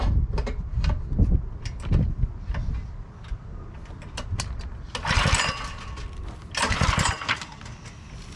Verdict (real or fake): real